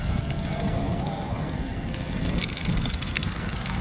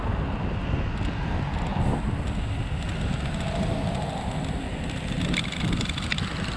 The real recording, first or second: second